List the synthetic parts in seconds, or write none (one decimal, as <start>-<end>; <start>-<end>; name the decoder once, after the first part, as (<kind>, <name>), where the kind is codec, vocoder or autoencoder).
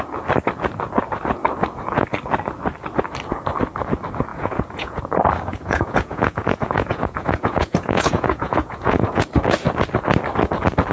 4.3-5.0 (vocoder, Vocos); 5.5-9.3